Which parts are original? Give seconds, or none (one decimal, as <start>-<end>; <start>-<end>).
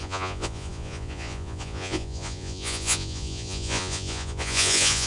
none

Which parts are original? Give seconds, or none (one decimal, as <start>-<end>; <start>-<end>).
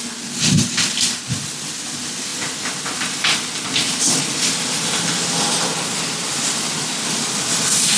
0.0-8.0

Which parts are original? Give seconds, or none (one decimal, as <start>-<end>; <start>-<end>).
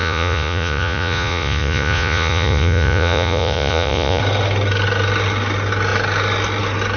4.2-7.0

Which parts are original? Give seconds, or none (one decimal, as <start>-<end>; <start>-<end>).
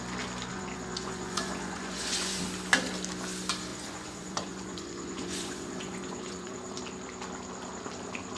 0.0-0.5; 2.4-3.7; 6.8-8.4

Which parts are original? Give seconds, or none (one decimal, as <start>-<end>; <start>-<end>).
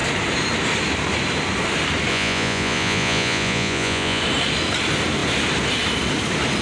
0.0-2.1; 4.2-6.6